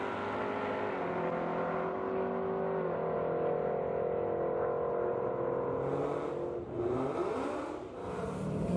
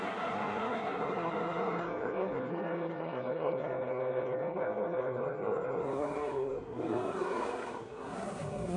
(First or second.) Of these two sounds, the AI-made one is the second